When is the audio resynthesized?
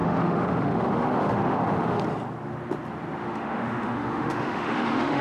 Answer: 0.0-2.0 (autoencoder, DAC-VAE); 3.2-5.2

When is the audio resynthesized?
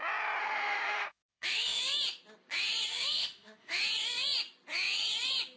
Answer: 0.4-1.8 (autoencoder, DAC-VAE); 2.9-3.8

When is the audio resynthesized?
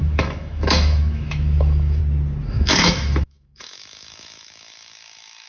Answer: 0.0-2.0 (autoencoder, DAC-VAE); 2.5-5.5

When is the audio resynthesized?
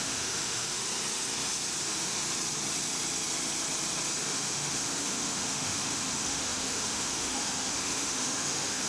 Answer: 0.0-0.8 (autoencoder, DAC-VAE); 1.8-2.2; 4.2-8.9